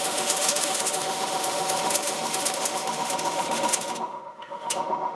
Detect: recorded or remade remade